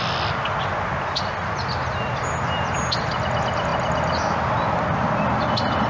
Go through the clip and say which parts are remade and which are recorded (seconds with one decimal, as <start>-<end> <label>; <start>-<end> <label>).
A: 0.0-5.9 recorded